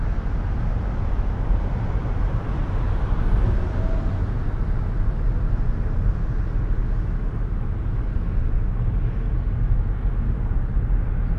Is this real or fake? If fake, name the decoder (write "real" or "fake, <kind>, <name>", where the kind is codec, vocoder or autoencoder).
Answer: real